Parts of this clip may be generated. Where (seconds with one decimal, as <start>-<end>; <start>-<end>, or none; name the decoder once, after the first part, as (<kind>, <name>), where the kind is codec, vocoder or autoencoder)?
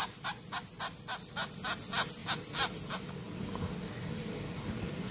none